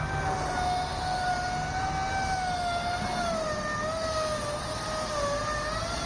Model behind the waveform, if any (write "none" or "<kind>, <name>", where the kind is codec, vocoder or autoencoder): none